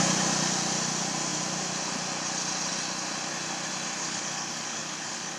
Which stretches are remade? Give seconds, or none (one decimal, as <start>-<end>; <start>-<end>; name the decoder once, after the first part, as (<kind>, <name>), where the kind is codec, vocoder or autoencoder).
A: 4.0-5.4 (codec, DAC)